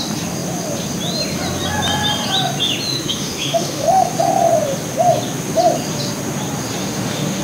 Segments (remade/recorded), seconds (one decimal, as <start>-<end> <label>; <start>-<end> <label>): 0.0-2.9 recorded; 2.9-4.1 remade; 4.1-6.8 recorded; 6.8-7.4 remade